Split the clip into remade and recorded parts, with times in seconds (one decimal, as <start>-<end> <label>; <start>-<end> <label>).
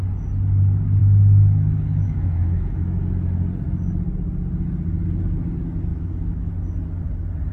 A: 0.0-1.0 recorded; 1.0-3.0 remade; 3.0-5.9 recorded; 5.9-6.5 remade; 6.5-7.5 recorded